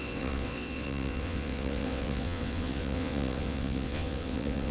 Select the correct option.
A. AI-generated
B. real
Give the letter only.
A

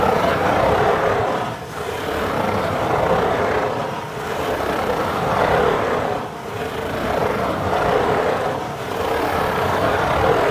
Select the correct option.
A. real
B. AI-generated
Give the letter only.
B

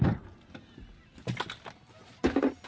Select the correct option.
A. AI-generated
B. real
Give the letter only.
B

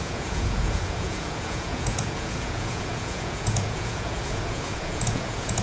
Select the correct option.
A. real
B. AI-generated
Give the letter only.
B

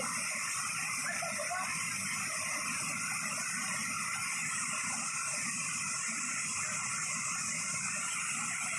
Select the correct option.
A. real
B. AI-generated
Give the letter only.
B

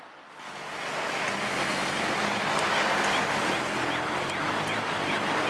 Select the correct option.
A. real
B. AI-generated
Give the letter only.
A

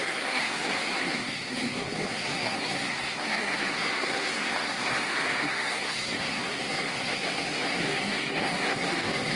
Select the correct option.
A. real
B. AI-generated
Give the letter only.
B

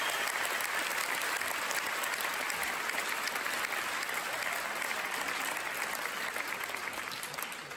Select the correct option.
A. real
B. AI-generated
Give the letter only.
A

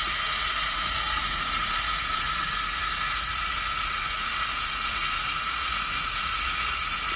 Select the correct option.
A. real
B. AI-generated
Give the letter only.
B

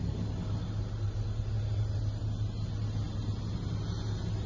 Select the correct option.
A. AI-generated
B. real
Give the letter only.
B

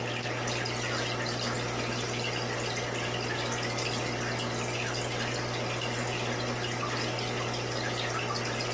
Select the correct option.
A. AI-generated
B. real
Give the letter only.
B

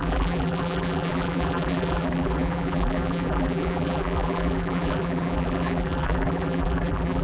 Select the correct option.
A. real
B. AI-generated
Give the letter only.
B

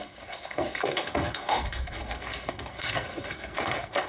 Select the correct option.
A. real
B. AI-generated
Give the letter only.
B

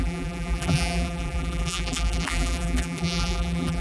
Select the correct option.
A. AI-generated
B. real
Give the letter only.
A